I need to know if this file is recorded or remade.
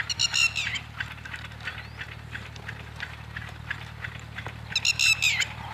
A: recorded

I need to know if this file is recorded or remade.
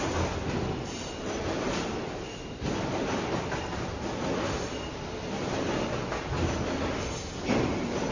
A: recorded